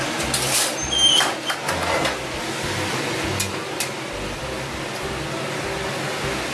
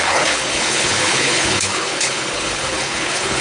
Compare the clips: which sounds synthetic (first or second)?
second